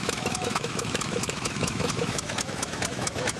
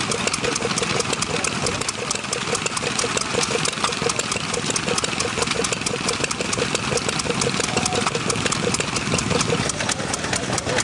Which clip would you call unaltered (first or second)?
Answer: second